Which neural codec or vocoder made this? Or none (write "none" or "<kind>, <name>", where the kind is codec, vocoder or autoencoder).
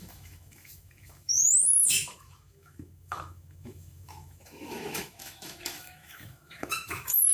autoencoder, DAC-VAE